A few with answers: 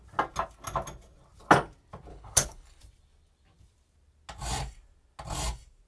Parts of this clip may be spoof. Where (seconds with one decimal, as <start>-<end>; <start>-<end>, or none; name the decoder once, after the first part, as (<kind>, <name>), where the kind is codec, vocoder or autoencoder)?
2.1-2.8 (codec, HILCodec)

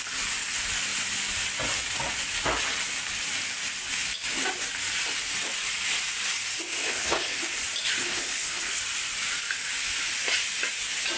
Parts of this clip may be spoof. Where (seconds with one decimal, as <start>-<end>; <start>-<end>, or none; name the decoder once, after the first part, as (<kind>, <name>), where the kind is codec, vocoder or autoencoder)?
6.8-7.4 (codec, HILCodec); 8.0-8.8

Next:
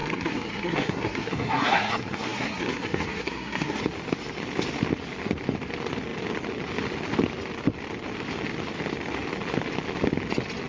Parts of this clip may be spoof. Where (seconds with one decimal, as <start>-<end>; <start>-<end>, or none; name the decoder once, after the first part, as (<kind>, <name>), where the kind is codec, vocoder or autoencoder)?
0.0-3.8 (codec, SNAC)